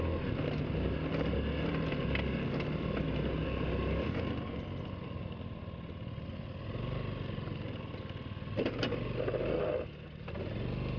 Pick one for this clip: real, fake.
real